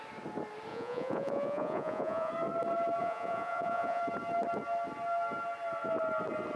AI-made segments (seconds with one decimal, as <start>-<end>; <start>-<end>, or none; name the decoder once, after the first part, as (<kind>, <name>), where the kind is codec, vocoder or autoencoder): 0.7-2.3 (vocoder, Vocos); 3.0-4.0